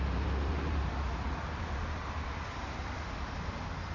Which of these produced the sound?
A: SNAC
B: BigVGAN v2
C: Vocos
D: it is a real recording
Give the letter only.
D